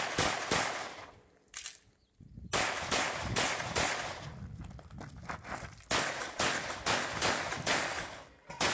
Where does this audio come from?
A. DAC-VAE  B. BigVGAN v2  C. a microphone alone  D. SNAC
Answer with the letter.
C